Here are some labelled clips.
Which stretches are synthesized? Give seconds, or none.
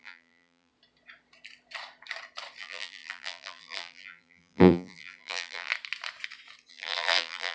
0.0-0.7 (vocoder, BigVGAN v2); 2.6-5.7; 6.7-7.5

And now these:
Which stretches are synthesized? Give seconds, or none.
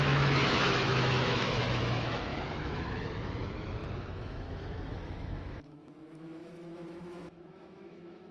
0.0-8.3 (autoencoder, DAC-VAE)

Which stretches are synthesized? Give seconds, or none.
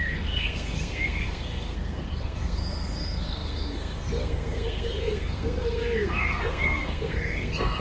0.0-7.8 (codec, SNAC)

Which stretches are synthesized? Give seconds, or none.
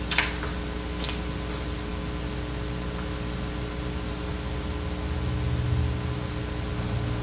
none